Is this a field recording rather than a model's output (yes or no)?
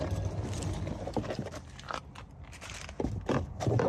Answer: yes